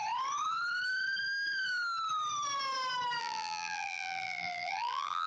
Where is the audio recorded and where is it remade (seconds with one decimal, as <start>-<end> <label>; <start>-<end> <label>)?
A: 0.0-3.2 recorded; 3.2-5.3 remade